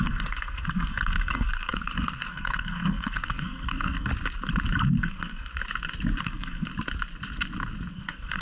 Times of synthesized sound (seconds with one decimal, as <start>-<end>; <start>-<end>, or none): 0.0-4.1; 5.0-5.5; 6.2-6.7; 7.9-8.4